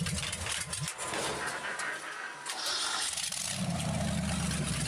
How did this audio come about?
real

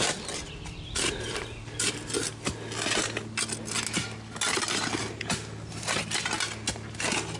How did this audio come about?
real